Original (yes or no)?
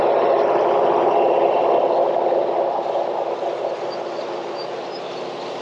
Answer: yes